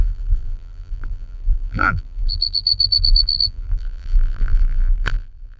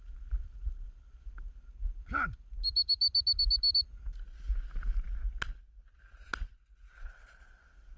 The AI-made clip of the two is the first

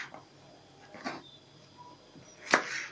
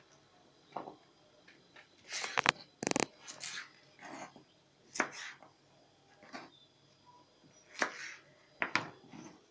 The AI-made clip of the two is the first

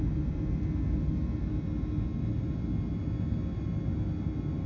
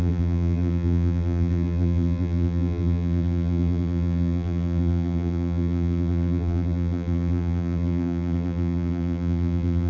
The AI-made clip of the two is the second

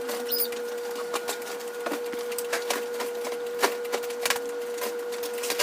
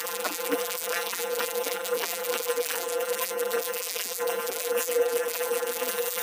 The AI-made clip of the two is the second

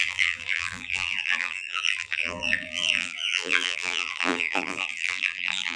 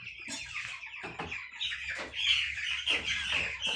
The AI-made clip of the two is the first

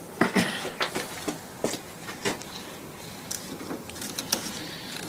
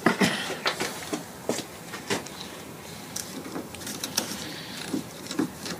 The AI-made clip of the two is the second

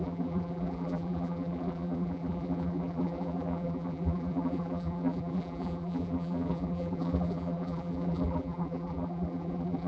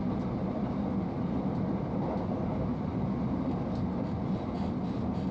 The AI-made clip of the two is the first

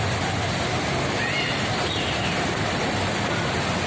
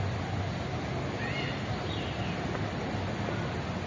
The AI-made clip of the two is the first